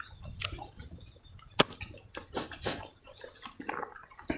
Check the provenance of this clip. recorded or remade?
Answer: recorded